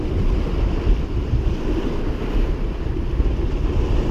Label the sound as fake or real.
fake